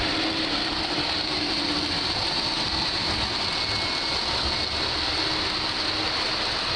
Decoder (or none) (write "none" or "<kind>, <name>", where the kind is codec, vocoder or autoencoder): none